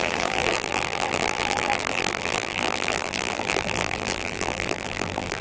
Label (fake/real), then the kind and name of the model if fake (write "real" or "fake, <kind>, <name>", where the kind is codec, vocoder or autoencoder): fake, vocoder, BigVGAN v2